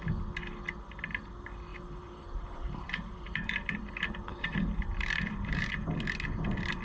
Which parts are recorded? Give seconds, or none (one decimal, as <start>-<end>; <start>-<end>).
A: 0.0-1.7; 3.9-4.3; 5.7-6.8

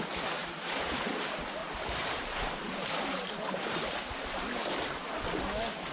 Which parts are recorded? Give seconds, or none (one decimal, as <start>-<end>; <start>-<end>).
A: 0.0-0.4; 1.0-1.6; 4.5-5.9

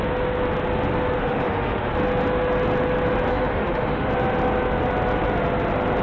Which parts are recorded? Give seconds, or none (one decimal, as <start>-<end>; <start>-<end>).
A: 0.0-1.2; 1.9-3.3; 4.1-6.0